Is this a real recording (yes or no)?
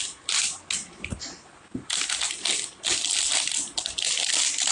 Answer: yes